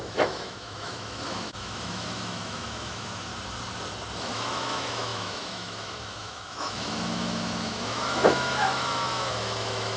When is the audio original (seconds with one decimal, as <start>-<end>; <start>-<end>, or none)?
3.3-4.2